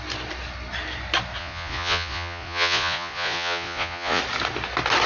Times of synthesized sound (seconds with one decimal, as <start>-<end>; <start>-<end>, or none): 1.4-4.2